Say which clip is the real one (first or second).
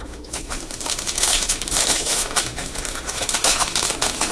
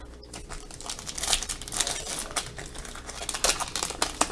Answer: second